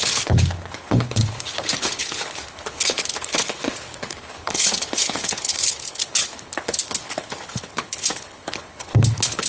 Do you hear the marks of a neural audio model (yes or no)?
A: yes